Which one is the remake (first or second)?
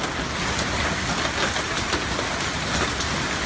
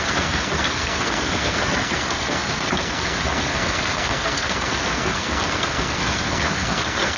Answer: second